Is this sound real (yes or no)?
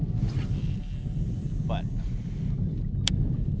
yes